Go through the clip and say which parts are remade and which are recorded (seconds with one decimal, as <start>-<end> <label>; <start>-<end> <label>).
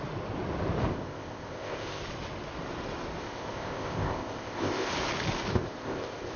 0.0-0.9 recorded; 0.9-2.0 remade; 2.0-3.2 recorded; 3.2-4.9 remade; 4.9-5.5 recorded; 5.5-6.4 remade